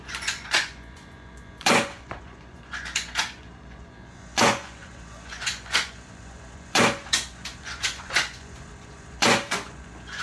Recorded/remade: remade